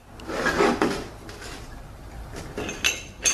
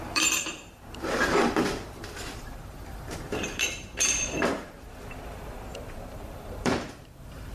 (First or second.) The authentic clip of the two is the first